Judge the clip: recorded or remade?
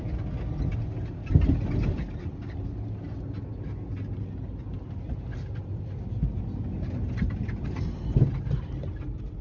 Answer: recorded